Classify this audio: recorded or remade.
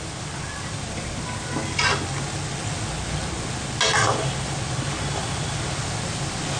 recorded